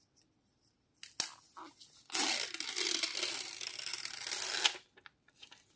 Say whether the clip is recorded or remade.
recorded